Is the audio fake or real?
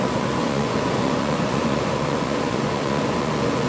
fake